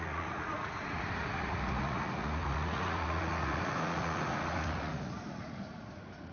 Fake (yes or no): yes